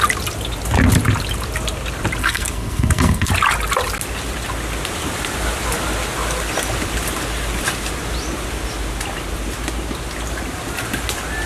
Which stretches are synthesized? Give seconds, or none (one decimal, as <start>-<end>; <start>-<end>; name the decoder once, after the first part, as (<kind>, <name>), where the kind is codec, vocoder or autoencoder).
2.2-3.3 (codec, SNAC)